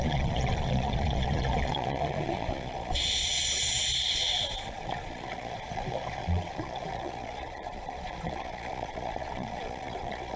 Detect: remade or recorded remade